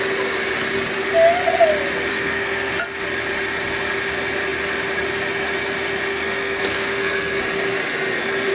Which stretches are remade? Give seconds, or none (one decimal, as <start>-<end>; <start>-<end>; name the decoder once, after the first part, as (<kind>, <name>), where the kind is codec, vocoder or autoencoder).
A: 2.1-2.7 (codec, SNAC); 6.1-7.4